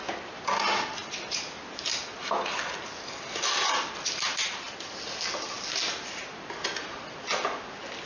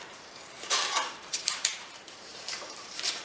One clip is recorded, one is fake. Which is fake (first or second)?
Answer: second